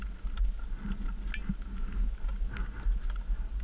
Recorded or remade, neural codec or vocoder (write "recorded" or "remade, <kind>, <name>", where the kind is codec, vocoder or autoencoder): recorded